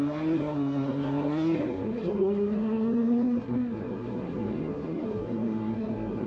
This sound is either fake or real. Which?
fake